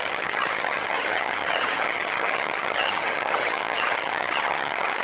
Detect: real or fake fake